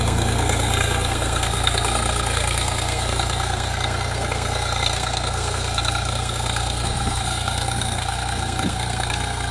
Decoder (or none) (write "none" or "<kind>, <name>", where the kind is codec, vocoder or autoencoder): codec, SNAC